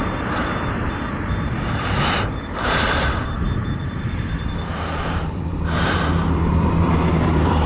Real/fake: fake